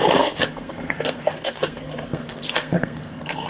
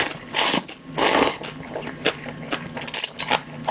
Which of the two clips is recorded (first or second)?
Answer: second